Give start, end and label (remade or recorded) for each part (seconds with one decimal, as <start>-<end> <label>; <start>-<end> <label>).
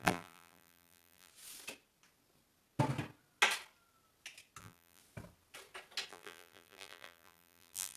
0.0-1.3 remade; 1.3-4.6 recorded; 4.6-5.0 remade; 5.0-6.1 recorded; 6.1-8.0 remade